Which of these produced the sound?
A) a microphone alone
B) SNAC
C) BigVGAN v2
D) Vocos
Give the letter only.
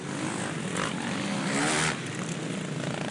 A